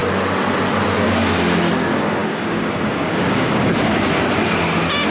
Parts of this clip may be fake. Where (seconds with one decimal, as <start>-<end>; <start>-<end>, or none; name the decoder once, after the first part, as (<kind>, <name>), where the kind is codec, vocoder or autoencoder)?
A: 2.2-3.7 (codec, DAC)